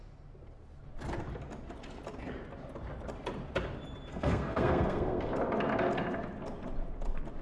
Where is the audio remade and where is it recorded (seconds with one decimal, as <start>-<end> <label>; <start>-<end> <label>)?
0.0-4.1 recorded; 4.1-5.3 remade; 5.3-7.4 recorded